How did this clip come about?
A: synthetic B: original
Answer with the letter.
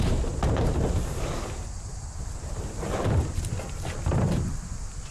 B